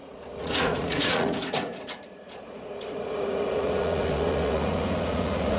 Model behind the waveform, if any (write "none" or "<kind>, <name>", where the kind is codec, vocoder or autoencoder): vocoder, Vocos